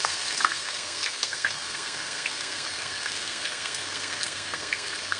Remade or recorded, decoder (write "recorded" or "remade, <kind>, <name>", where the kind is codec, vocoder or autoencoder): remade, codec, SNAC